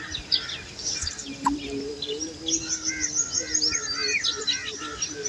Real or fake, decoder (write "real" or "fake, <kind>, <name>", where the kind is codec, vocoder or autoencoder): real